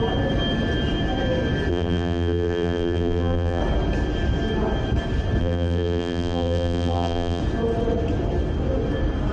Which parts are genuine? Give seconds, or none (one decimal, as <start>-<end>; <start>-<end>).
0.0-1.7; 3.6-5.4; 7.4-9.3